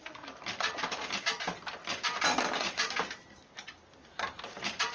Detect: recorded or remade remade